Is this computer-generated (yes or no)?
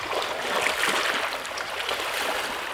no